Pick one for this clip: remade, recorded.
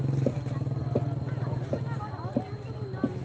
recorded